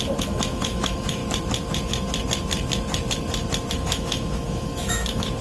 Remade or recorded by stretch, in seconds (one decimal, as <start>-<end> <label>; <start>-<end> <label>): 0.0-1.2 remade; 1.2-3.7 recorded; 3.7-5.4 remade

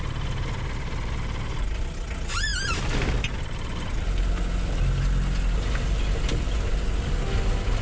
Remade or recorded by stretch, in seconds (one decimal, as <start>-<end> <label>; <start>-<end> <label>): 0.0-7.8 recorded

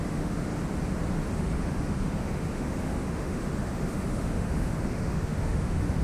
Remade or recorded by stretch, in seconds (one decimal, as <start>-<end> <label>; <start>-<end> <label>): 0.0-0.5 remade; 0.5-1.3 recorded; 1.3-6.0 remade

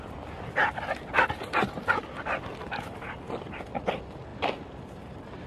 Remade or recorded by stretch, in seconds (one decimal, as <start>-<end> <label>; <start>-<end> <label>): 0.0-5.5 recorded

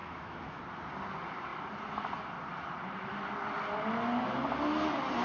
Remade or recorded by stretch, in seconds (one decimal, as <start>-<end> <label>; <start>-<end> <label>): 0.0-0.6 remade; 0.6-5.2 recorded

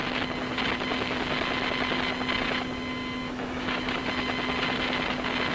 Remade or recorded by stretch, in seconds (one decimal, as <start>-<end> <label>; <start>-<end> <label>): 0.0-3.3 recorded; 3.3-4.0 remade; 4.0-5.5 recorded